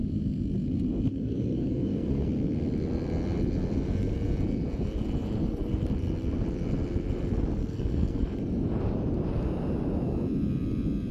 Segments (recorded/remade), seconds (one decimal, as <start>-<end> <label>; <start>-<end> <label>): 0.0-1.1 recorded; 1.1-2.3 remade; 2.3-7.6 recorded; 7.6-8.2 remade; 8.2-11.1 recorded